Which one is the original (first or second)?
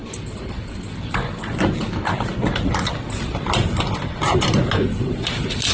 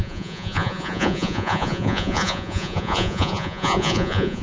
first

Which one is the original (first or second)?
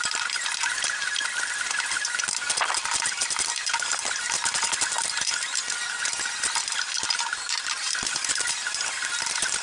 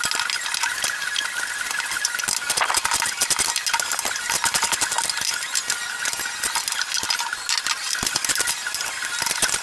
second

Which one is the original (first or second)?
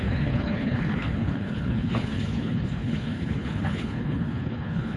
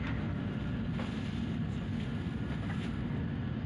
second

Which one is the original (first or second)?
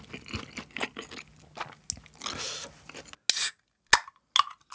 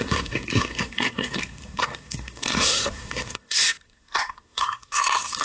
first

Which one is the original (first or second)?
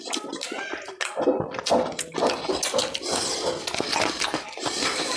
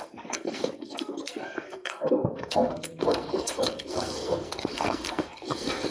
first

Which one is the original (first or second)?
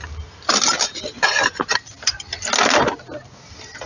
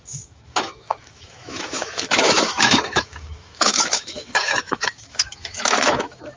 first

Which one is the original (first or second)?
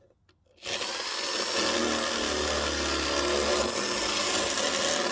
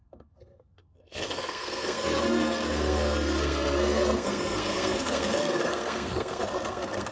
first